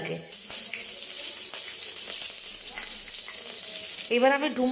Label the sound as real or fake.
real